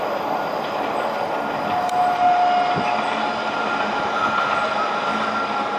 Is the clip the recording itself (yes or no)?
yes